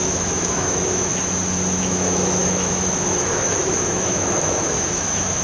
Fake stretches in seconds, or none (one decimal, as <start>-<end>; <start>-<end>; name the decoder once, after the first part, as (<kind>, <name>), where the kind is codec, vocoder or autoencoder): 0.0-1.1 (autoencoder, DAC-VAE); 1.8-5.4